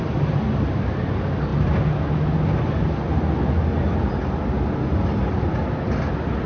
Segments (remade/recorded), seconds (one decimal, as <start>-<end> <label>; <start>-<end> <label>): 0.0-6.5 recorded